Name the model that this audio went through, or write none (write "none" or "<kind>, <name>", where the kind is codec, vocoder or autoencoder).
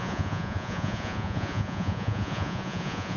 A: vocoder, Vocos